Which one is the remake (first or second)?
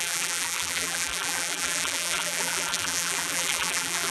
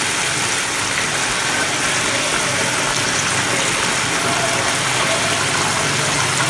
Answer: first